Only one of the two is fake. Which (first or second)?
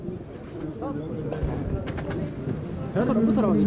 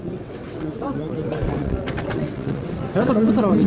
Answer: second